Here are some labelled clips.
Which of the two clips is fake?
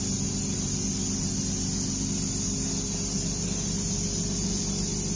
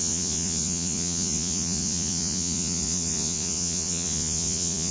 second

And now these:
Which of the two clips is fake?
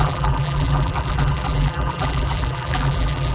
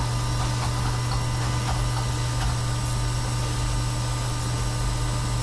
first